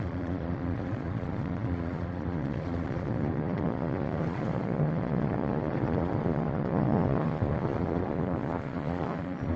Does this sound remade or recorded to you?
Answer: remade